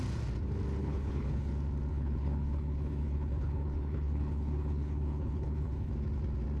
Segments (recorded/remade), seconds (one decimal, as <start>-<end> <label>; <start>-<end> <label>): 0.0-0.8 recorded; 0.8-1.5 remade; 1.5-1.9 recorded; 1.9-5.9 remade; 5.9-6.6 recorded